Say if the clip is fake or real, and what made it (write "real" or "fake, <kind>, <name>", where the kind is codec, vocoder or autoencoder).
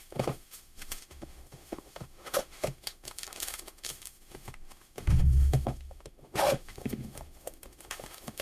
fake, autoencoder, DAC-VAE